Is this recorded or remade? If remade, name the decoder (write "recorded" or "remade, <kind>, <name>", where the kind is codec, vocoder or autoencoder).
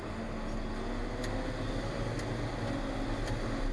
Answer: recorded